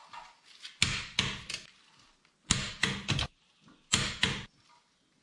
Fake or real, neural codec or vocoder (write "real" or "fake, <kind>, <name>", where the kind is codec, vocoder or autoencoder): real